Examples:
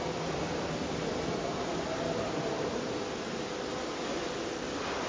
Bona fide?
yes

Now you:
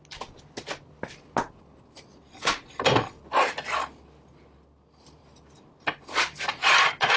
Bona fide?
yes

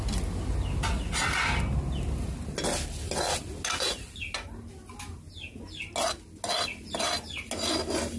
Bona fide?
yes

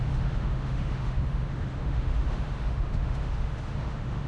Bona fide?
no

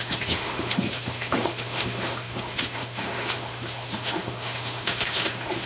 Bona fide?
no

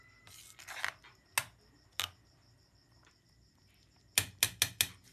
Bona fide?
yes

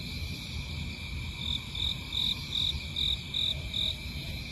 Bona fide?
yes